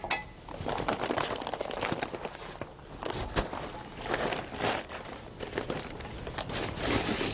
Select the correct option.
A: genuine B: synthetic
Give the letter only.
A